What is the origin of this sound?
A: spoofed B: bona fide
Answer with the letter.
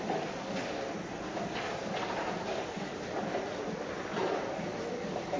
B